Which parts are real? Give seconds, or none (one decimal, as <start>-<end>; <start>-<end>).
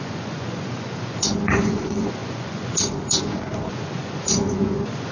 none